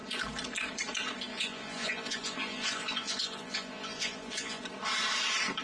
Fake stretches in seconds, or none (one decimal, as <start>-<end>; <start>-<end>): 1.3-4.6